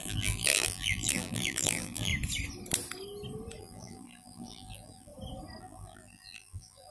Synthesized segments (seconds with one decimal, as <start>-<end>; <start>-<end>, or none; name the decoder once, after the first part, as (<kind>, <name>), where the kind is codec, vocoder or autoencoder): 0.0-2.1 (vocoder, BigVGAN v2); 3.6-5.1; 5.6-6.9